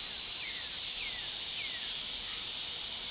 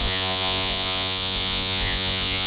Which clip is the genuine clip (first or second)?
first